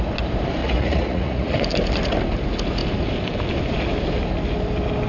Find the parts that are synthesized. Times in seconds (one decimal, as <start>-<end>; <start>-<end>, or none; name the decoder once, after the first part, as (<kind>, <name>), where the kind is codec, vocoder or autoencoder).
0.6-1.6 (vocoder, Vocos)